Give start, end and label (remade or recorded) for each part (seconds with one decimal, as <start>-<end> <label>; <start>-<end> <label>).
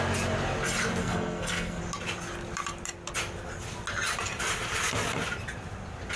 0.0-1.0 recorded; 1.0-1.8 remade; 1.8-6.2 recorded